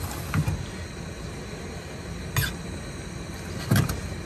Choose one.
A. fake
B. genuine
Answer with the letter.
B